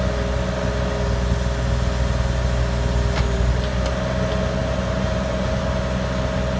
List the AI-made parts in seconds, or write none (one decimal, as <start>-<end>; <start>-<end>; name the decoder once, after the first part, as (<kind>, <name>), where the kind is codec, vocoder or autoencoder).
4.6-5.6 (vocoder, BigVGAN v2)